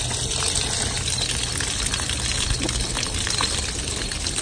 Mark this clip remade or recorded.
recorded